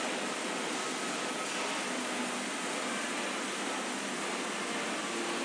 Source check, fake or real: real